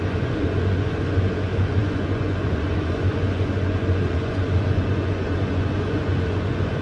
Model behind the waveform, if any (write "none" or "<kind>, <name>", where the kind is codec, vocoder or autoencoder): vocoder, Vocos